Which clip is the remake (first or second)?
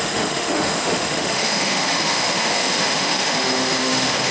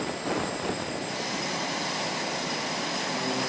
first